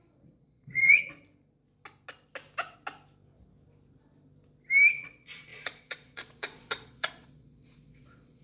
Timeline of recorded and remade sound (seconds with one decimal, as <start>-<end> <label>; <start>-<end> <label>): 0.0-1.1 remade; 1.1-4.9 recorded; 4.9-8.4 remade